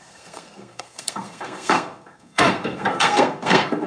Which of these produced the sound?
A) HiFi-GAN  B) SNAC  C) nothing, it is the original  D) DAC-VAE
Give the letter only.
B